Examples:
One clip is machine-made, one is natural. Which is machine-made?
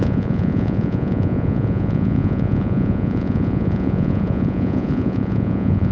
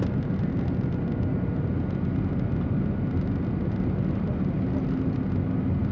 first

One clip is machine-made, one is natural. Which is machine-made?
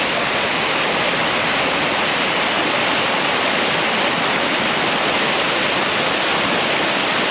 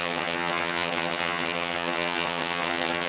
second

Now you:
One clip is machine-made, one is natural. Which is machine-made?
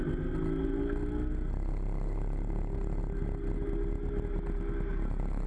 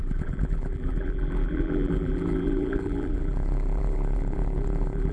second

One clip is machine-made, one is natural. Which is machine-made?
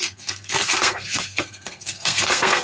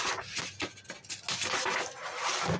first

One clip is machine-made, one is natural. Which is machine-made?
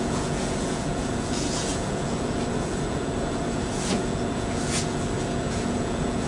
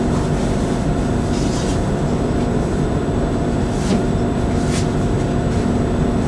first